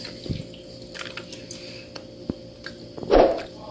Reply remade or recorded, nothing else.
recorded